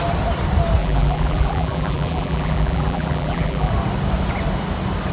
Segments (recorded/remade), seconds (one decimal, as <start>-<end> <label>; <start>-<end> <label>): 0.0-0.8 recorded; 0.8-3.7 remade; 3.7-5.1 recorded